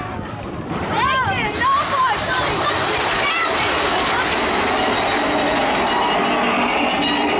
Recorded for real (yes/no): yes